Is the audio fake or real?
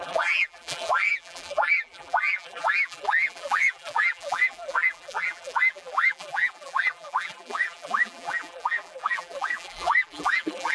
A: fake